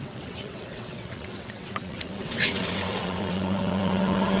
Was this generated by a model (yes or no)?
yes